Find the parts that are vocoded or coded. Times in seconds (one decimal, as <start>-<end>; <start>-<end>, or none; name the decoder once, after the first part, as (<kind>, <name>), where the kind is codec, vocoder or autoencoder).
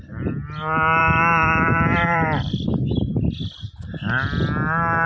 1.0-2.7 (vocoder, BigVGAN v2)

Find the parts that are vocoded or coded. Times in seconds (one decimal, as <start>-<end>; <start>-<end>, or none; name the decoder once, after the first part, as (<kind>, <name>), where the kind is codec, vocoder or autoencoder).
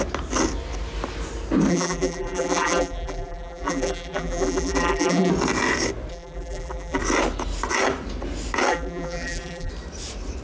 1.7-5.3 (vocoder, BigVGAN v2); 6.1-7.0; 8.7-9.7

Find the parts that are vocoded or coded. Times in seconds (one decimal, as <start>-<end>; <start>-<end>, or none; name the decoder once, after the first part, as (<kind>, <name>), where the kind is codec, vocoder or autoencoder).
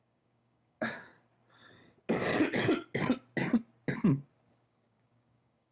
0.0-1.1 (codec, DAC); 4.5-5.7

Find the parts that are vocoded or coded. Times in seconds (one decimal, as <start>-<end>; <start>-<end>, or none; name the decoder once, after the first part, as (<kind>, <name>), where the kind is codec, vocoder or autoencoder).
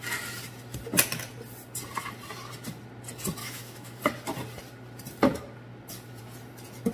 3.4-4.0 (autoencoder, DAC-VAE)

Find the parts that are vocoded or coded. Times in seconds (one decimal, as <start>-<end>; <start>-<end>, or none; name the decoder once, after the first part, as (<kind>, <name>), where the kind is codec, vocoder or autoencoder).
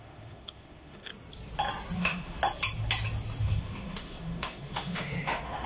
0.0-1.1 (autoencoder, DAC-VAE); 2.0-2.4; 3.4-5.7